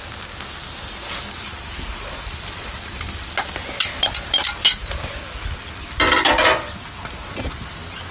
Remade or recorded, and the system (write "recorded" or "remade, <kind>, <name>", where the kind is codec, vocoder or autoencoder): recorded